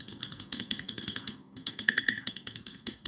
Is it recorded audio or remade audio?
remade